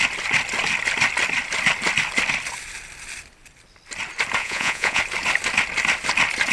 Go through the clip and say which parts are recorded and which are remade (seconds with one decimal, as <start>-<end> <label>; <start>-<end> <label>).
0.0-4.4 recorded; 4.4-5.0 remade; 5.0-6.5 recorded